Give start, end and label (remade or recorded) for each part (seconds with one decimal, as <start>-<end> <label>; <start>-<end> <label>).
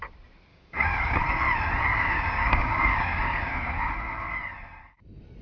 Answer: 0.0-0.5 recorded; 0.5-1.2 remade; 1.2-1.9 recorded; 1.9-3.9 remade; 3.9-5.4 recorded